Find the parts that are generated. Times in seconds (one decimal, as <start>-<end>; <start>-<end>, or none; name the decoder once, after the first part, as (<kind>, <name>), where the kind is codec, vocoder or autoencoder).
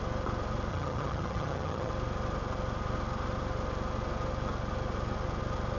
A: 0.7-1.9 (vocoder, HiFi-GAN)